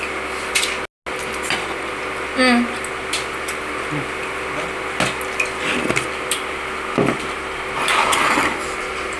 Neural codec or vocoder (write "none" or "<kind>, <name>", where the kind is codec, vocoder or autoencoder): none